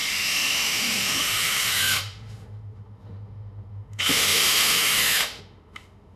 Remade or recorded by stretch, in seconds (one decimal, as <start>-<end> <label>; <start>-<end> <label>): 0.0-6.2 remade

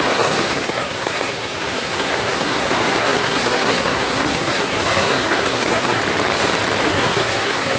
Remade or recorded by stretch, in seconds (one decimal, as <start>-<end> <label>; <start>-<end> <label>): 0.0-6.0 remade; 6.0-6.8 recorded; 6.8-7.8 remade